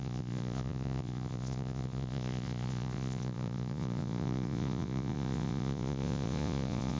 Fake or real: fake